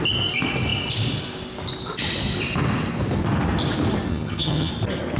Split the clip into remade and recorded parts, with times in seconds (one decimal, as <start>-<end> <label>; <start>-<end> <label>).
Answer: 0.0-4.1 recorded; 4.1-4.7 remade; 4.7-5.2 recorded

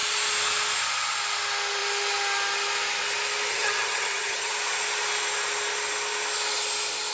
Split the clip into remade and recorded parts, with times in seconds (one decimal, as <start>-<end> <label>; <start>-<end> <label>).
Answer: 0.0-3.5 recorded; 3.5-4.5 remade; 4.5-7.1 recorded

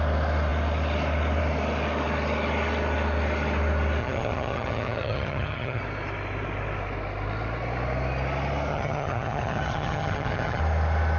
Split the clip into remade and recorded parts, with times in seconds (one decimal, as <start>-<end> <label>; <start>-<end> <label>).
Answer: 0.0-4.0 recorded; 4.0-5.8 remade; 5.8-8.7 recorded; 8.7-10.6 remade; 10.6-11.2 recorded

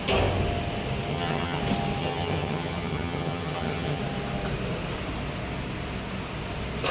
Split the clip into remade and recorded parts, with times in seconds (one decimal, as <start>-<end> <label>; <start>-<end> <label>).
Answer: 0.0-1.1 recorded; 1.1-1.6 remade; 1.6-2.0 recorded; 2.0-4.0 remade; 4.0-6.9 recorded

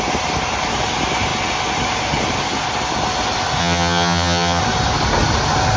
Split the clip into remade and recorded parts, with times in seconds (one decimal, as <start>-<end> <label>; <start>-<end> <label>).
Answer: 0.0-3.6 recorded; 3.6-4.6 remade; 4.6-5.8 recorded

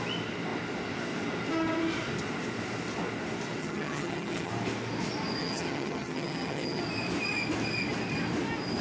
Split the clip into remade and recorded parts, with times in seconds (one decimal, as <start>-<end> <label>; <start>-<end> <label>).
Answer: 0.0-3.6 recorded; 3.6-4.5 remade; 4.5-5.4 recorded; 5.4-6.8 remade; 6.8-8.8 recorded

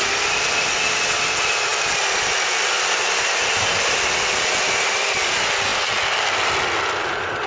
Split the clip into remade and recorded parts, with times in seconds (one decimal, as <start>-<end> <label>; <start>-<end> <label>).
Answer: 0.0-7.5 recorded

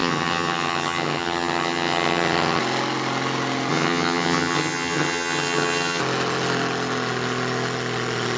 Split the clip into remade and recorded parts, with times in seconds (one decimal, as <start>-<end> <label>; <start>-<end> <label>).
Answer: 0.0-2.6 remade; 2.6-3.7 recorded; 3.7-6.0 remade; 6.0-8.4 recorded